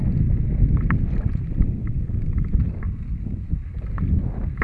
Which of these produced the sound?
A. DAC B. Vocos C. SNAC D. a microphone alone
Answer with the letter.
D